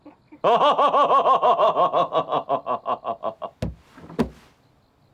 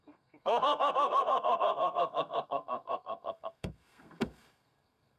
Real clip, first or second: first